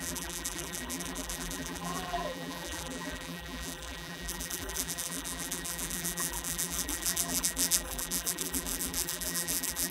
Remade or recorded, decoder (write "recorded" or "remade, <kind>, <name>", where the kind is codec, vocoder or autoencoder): remade, vocoder, BigVGAN v2